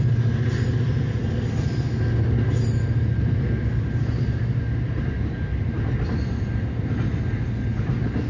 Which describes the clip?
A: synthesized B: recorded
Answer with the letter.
B